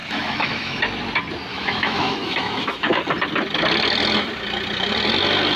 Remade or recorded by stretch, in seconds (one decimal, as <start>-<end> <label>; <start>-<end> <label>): 0.0-0.8 remade; 0.8-1.5 recorded; 1.5-3.0 remade; 3.0-5.6 recorded